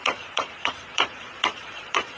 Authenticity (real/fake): fake